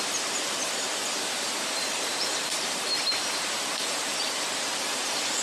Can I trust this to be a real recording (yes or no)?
no